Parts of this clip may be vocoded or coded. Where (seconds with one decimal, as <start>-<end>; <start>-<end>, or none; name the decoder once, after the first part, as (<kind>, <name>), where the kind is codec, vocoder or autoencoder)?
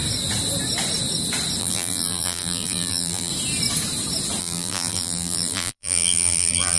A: 1.6-3.3 (vocoder, BigVGAN v2); 4.4-6.8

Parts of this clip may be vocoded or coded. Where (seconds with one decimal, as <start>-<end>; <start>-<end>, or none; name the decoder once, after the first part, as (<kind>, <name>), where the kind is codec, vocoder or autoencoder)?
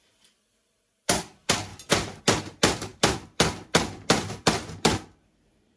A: 0.0-5.8 (vocoder, BigVGAN v2)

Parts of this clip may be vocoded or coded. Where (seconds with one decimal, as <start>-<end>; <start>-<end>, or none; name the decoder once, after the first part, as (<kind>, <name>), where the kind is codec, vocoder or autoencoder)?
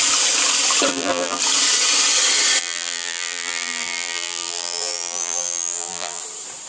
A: 0.9-1.4 (vocoder, BigVGAN v2); 2.6-6.2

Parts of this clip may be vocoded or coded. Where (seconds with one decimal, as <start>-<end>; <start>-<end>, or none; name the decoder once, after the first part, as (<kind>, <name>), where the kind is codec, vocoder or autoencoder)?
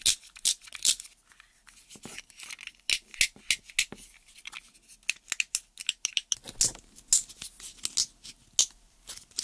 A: none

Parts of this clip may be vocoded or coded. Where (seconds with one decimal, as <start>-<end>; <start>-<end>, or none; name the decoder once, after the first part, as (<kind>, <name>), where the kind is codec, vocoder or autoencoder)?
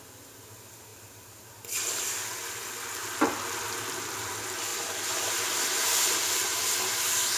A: 4.7-5.4 (vocoder, BigVGAN v2)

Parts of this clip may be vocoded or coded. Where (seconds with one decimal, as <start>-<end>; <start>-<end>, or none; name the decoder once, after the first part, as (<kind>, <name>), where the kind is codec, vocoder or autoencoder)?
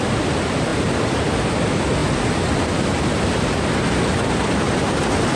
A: 2.0-5.4 (vocoder, BigVGAN v2)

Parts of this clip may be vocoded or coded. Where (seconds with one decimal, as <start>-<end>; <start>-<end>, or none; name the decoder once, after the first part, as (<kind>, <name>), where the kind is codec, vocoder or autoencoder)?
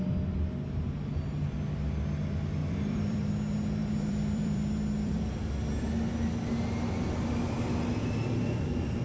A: 2.6-3.3 (vocoder, BigVGAN v2); 3.8-5.3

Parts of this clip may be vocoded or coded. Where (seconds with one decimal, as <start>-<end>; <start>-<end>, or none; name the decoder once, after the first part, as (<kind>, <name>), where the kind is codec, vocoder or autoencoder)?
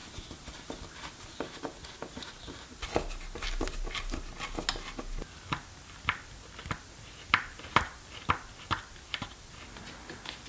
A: none